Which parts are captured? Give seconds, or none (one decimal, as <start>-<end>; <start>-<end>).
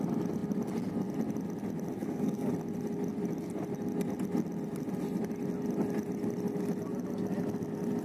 0.0-2.0; 2.5-8.0